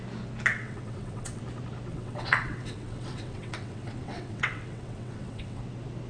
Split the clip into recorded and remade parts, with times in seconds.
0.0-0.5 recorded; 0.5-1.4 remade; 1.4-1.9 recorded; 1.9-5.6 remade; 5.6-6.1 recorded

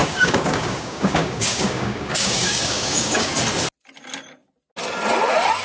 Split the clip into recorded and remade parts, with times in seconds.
0.0-3.3 remade; 3.3-5.6 recorded

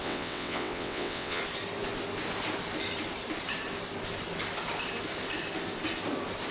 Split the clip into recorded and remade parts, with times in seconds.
0.0-1.4 remade; 1.4-6.5 recorded